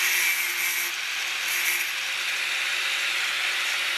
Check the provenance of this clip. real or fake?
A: real